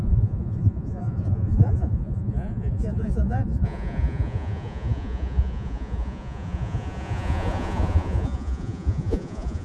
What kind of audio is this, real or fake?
fake